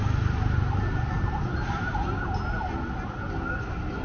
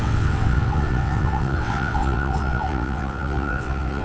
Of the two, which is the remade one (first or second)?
second